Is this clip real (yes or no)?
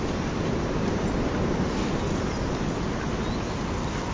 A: yes